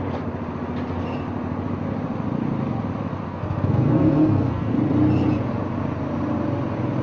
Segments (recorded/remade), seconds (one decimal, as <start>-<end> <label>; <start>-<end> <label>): 0.0-3.3 recorded; 3.3-4.7 remade; 4.7-7.0 recorded